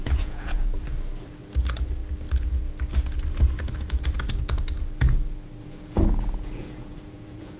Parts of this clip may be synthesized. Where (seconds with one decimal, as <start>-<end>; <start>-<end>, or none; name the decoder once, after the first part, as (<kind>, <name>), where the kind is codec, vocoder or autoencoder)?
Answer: 0.0-0.8 (vocoder, Vocos); 5.6-7.6